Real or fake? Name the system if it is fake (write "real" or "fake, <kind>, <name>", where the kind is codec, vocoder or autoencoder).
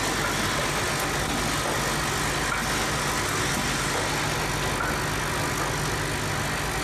real